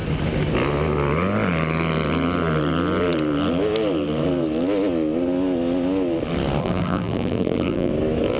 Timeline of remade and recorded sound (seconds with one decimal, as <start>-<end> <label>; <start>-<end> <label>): 0.0-6.6 recorded; 6.6-7.9 remade; 7.9-8.4 recorded